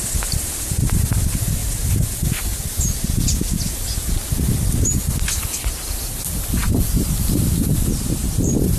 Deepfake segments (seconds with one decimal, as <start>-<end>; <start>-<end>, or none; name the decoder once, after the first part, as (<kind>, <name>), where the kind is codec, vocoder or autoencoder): none